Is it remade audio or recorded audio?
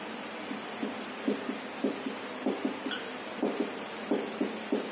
remade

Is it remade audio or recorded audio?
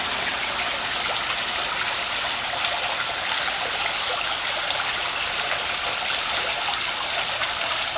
recorded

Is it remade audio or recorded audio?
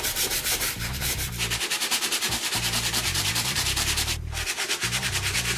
remade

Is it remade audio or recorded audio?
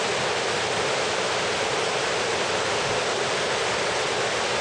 recorded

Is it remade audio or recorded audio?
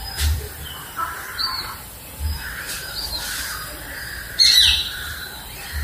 remade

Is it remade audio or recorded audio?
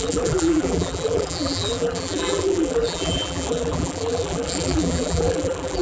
remade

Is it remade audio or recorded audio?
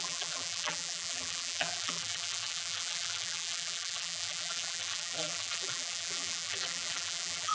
remade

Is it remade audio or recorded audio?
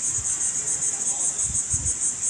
recorded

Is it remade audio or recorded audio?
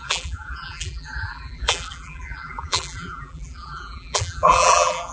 remade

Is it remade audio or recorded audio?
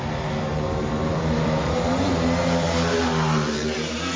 remade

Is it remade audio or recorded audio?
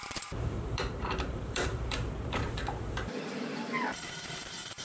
remade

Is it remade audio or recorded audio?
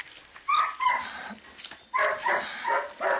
recorded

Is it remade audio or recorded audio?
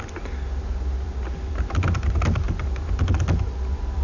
recorded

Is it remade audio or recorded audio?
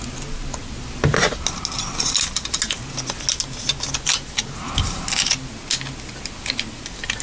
recorded